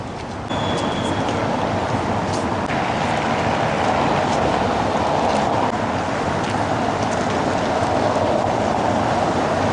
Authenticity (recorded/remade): recorded